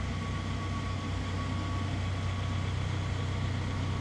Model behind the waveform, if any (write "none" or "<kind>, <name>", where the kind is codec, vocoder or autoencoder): none